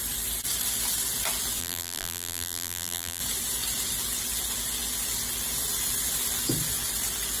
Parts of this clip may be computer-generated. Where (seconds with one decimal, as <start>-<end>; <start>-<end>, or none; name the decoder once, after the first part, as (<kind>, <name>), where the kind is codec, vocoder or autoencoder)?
1.6-3.2 (vocoder, BigVGAN v2)